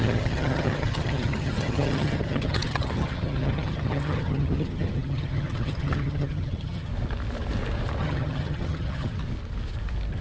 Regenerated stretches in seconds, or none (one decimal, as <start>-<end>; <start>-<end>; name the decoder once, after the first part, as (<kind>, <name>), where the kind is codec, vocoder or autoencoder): 0.0-6.9 (vocoder, HiFi-GAN); 8.0-9.2